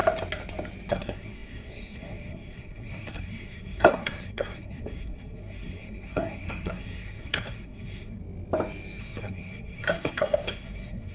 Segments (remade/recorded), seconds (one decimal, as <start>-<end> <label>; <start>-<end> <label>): 0.0-0.9 recorded; 0.9-8.2 remade; 8.2-9.0 recorded; 9.0-11.1 remade